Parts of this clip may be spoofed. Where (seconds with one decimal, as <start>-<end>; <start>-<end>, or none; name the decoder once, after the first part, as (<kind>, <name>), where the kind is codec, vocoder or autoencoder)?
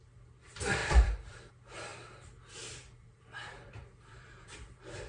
0.8-1.5 (vocoder, BigVGAN v2); 1.9-5.1